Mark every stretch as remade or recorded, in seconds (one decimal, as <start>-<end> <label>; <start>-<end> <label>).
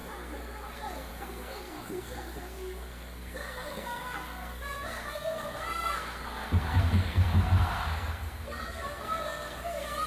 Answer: 0.0-10.1 remade